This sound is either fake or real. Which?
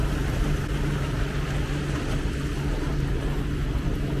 real